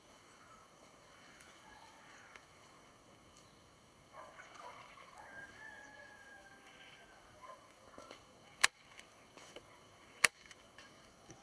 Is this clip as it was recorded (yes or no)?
no